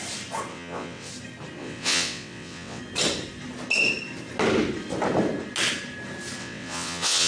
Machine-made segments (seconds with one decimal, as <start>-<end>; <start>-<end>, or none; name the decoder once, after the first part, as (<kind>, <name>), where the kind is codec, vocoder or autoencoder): 0.5-1.1 (vocoder, WaveNeXt); 1.6-2.8; 6.4-7.3